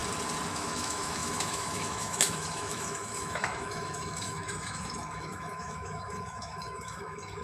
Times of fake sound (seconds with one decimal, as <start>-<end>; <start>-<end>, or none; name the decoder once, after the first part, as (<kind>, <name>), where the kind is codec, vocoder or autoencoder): 0.5-7.4 (autoencoder, DAC-VAE)